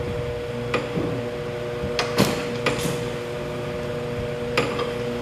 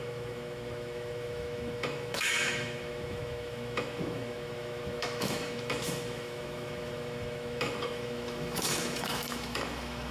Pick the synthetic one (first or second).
second